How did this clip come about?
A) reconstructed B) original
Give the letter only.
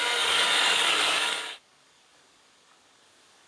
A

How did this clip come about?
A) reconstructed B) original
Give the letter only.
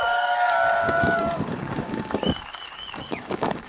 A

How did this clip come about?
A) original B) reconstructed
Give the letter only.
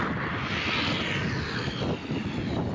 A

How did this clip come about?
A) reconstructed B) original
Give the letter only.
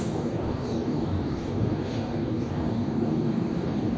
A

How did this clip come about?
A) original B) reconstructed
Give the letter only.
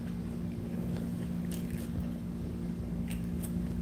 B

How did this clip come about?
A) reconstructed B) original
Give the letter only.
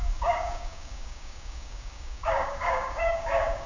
A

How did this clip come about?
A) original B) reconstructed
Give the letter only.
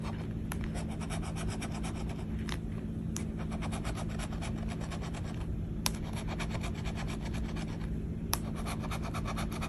A